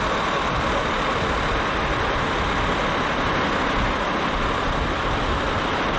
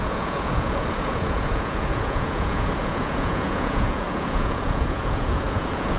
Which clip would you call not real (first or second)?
second